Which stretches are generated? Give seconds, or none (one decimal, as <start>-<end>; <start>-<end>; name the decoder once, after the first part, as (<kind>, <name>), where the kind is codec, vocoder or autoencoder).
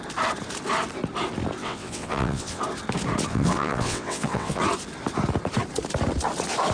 1.6-2.6 (vocoder, WaveNeXt); 3.3-4.6